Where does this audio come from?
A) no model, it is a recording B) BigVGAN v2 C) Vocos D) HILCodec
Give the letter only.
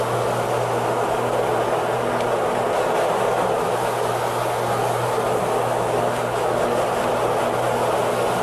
A